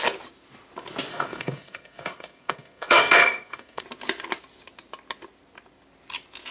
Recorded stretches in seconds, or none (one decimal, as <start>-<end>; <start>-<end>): 0.0-1.1; 3.8-6.5